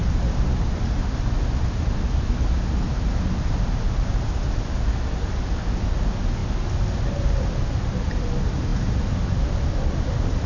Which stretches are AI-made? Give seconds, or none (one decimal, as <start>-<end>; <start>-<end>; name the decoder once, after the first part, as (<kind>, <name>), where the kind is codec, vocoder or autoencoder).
none